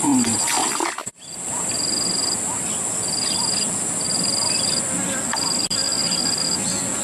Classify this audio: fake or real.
real